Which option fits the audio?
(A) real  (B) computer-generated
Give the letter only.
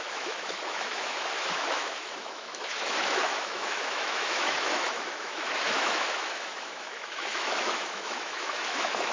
B